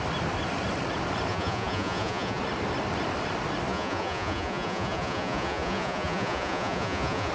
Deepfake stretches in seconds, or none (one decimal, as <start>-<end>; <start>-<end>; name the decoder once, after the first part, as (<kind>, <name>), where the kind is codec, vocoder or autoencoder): 1.3-2.4 (vocoder, Vocos); 3.7-7.3